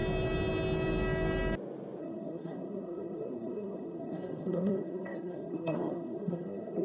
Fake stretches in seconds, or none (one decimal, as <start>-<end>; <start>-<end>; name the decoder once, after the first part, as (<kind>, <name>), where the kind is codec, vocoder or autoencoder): 2.0-6.8 (codec, SNAC)